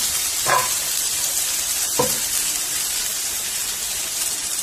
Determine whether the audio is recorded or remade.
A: recorded